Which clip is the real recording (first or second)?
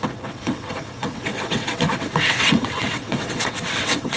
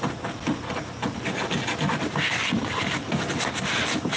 second